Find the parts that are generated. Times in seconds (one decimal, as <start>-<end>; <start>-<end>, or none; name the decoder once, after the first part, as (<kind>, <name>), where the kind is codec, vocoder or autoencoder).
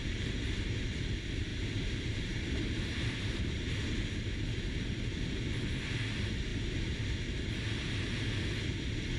0.0-0.8 (vocoder, BigVGAN v2); 1.5-3.4